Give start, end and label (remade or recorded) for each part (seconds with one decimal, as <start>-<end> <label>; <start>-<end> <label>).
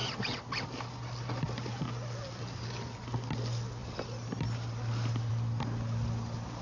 0.0-6.6 recorded